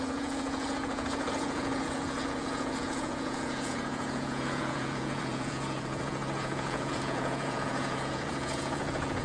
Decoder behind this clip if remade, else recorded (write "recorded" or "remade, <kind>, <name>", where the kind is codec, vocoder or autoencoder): remade, vocoder, Vocos